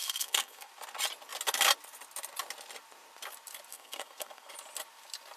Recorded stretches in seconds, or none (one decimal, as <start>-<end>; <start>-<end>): 0.7-3.7; 4.5-5.4